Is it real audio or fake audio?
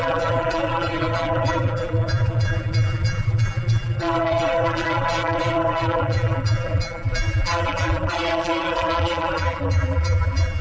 fake